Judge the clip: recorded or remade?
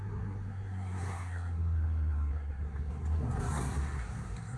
remade